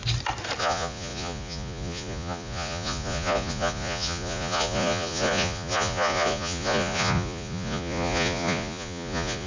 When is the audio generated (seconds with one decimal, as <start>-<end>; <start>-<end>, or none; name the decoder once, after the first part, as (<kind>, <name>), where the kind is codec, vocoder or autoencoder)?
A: 0.6-9.5 (vocoder, Vocos)